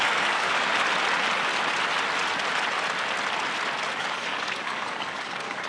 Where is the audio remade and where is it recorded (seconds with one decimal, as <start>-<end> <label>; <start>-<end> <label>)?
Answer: 0.0-0.7 remade; 0.7-4.0 recorded; 4.0-5.7 remade